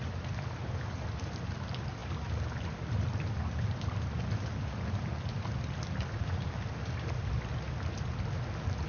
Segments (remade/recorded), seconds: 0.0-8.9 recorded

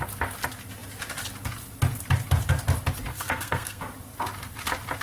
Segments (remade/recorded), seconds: 0.0-3.1 recorded; 3.1-3.8 remade; 3.8-5.0 recorded

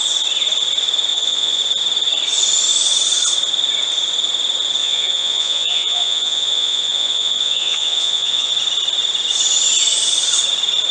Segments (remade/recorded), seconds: 0.0-1.1 recorded; 1.1-1.6 remade; 1.6-4.8 recorded; 4.8-8.5 remade; 8.5-10.9 recorded

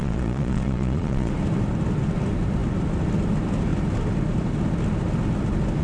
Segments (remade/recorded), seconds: 0.0-1.3 remade; 1.3-5.8 recorded

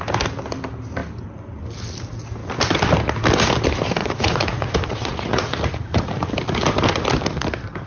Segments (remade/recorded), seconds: 0.0-4.0 recorded; 4.0-6.3 remade; 6.3-7.9 recorded